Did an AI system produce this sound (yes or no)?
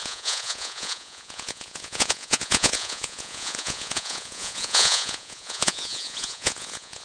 yes